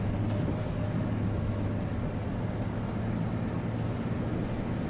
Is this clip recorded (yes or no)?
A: yes